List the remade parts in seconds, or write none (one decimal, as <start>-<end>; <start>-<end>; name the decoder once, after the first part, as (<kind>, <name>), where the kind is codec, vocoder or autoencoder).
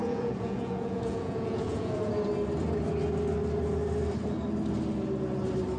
0.0-2.1 (vocoder, Vocos)